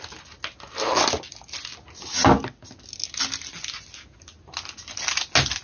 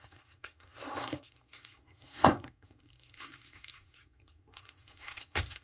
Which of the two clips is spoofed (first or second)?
second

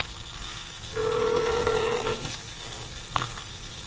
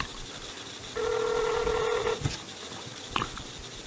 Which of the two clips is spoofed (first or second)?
first